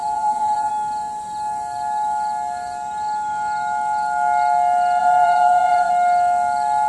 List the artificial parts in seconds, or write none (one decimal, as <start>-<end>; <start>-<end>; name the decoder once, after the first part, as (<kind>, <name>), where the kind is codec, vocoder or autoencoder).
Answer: 0.0-0.7 (vocoder, Vocos); 5.0-5.9